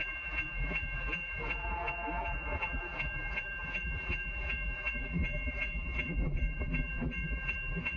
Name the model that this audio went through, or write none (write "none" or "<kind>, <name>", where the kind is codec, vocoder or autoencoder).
vocoder, BigVGAN v2